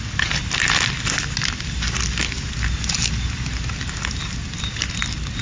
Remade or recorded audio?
recorded